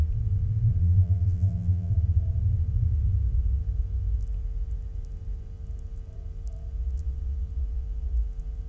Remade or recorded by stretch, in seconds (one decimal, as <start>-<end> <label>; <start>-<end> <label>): 0.0-0.8 recorded; 0.8-1.9 remade; 1.9-8.7 recorded